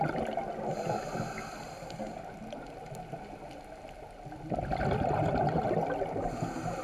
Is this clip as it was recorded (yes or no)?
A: yes